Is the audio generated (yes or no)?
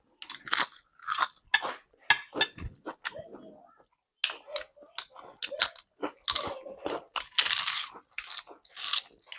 no